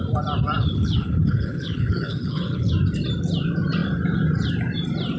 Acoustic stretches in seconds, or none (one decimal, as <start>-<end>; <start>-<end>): 0.0-0.6; 2.7-5.2